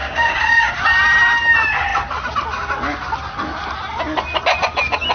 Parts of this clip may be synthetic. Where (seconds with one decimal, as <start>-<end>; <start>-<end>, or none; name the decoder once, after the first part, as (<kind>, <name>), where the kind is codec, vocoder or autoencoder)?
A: 0.0-0.7 (codec, DAC)